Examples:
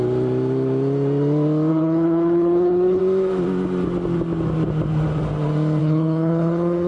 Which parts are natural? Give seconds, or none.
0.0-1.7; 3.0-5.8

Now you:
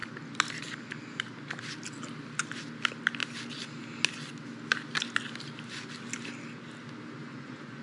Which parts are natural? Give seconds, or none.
0.0-7.2

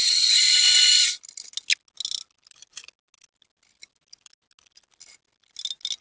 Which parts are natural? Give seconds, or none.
1.1-6.0